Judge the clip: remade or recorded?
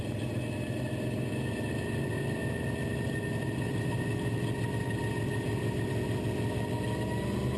recorded